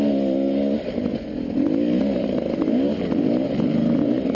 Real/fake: real